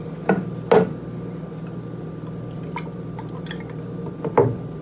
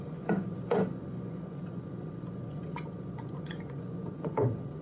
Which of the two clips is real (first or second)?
first